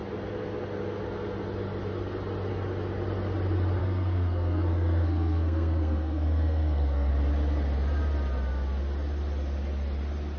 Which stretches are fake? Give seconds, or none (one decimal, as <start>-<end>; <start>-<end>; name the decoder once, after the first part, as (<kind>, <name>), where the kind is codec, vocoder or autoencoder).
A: 3.8-7.1 (codec, SNAC)